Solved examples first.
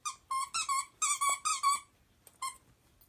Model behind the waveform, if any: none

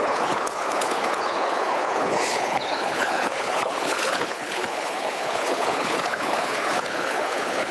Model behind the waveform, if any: codec, HILCodec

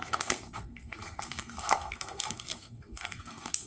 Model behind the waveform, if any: codec, SNAC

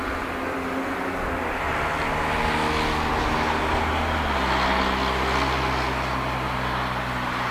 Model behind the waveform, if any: none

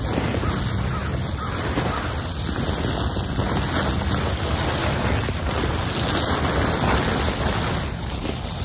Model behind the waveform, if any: none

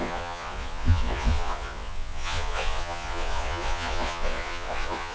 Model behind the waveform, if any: vocoder, Vocos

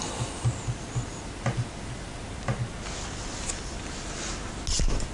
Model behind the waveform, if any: none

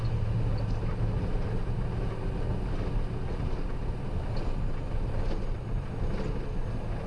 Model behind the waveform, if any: none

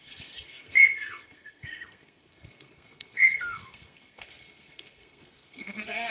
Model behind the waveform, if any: codec, SNAC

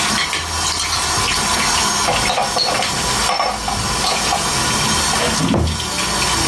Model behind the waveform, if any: none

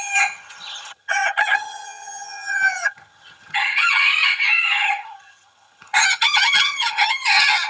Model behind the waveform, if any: vocoder, HiFi-GAN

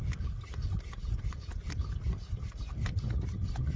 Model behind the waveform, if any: none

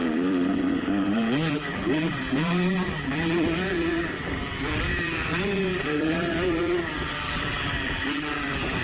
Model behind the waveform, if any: vocoder, BigVGAN v2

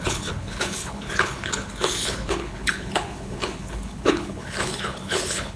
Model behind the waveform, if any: codec, HILCodec